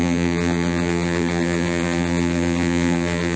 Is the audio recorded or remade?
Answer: remade